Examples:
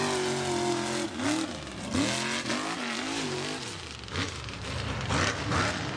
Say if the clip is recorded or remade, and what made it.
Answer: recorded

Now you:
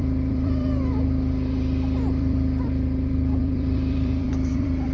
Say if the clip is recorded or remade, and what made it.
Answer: remade, vocoder, BigVGAN v2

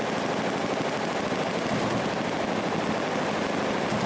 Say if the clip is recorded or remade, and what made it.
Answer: recorded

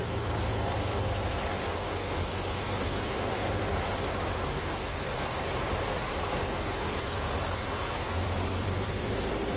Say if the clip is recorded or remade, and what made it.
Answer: remade, vocoder, BigVGAN v2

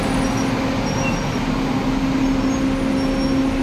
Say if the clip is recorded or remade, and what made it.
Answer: recorded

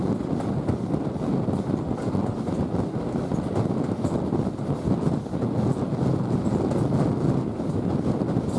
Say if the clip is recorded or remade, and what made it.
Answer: recorded